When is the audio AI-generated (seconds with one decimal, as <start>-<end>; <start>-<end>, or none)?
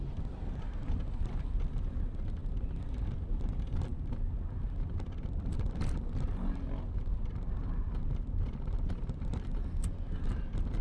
none